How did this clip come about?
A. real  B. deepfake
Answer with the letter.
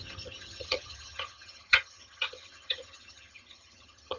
B